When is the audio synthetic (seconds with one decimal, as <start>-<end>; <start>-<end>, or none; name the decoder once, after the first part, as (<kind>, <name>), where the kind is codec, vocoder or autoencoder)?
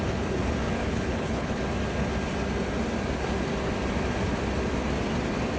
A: 0.8-1.6 (codec, HILCodec)